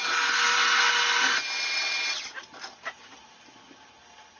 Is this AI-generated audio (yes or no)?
no